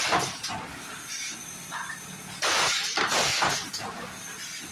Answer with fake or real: fake